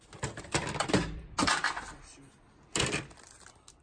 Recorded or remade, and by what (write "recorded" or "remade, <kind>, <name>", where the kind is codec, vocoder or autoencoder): recorded